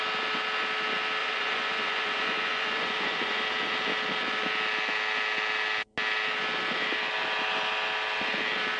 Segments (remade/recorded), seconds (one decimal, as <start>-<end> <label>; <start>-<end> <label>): 0.0-1.2 recorded; 1.2-3.4 remade; 3.4-8.8 recorded